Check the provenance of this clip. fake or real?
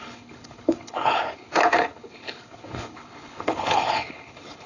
fake